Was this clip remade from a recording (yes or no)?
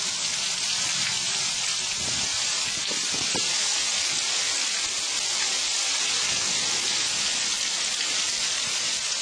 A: no